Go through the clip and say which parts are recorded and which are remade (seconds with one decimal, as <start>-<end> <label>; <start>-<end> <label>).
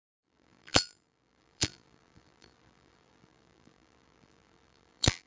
0.0-5.3 remade